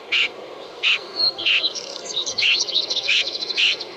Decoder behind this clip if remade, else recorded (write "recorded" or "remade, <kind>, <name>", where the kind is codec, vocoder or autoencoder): remade, codec, SNAC